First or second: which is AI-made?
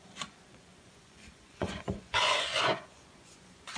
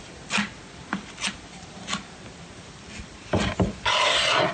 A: first